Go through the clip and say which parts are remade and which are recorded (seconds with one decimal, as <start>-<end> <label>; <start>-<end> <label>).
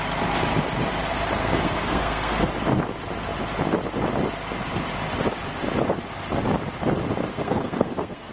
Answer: 0.0-1.4 recorded; 1.4-2.5 remade; 2.5-7.3 recorded; 7.3-8.3 remade